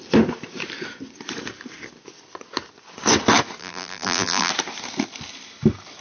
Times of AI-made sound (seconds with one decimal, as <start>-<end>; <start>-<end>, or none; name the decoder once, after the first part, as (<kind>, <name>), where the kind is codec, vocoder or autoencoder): 3.6-4.5 (vocoder, BigVGAN v2)